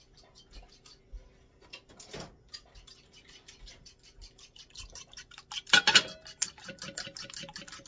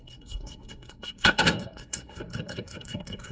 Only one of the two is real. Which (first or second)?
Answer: first